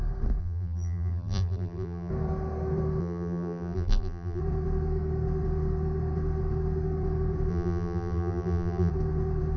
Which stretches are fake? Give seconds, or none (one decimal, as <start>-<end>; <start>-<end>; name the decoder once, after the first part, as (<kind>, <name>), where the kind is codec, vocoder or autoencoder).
0.4-2.1 (vocoder, BigVGAN v2); 3.0-4.4; 7.5-8.9